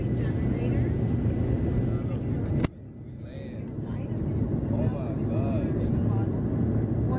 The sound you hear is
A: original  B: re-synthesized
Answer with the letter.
A